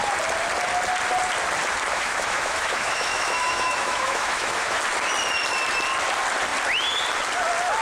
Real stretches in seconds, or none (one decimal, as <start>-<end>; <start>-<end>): 0.0-1.9; 4.8-7.8